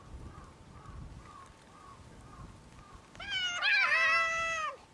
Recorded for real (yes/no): yes